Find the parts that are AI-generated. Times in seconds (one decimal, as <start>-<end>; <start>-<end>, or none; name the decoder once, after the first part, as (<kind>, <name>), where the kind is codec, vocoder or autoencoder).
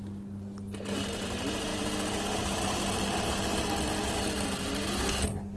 none